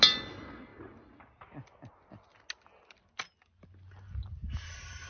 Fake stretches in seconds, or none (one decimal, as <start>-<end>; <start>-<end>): none